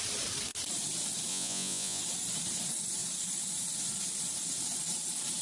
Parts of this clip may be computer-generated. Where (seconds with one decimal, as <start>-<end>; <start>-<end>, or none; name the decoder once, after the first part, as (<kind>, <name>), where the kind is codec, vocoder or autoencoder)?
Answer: 1.3-2.0 (vocoder, Vocos)